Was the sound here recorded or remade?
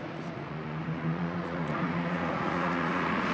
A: remade